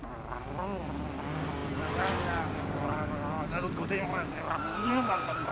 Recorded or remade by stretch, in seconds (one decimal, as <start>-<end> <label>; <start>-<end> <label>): 0.0-5.5 recorded